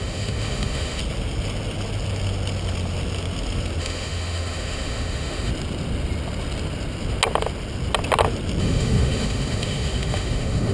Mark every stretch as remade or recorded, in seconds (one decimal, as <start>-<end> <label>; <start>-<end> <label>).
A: 0.0-1.0 remade; 1.0-3.8 recorded; 3.8-5.5 remade; 5.5-8.6 recorded; 8.6-10.7 remade